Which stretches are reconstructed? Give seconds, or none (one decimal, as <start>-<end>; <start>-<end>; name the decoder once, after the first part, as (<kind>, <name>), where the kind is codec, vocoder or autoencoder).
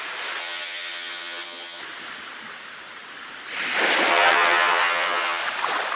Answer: 0.4-1.8 (vocoder, HiFi-GAN); 4.1-5.4